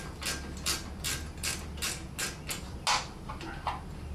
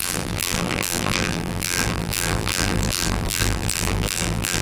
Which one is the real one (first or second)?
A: first